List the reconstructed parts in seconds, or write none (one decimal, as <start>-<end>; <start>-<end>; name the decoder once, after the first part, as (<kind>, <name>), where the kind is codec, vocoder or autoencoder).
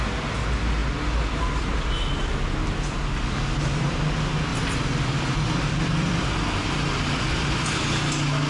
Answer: 4.5-8.1 (vocoder, BigVGAN v2)